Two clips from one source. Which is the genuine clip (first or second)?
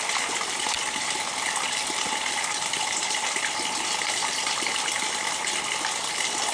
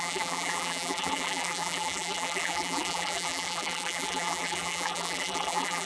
first